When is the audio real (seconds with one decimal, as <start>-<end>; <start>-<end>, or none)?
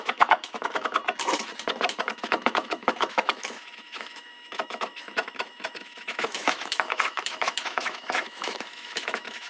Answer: 1.0-2.0